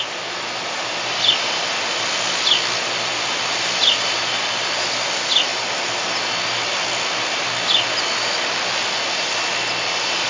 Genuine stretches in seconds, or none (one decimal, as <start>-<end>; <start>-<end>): 0.0-10.3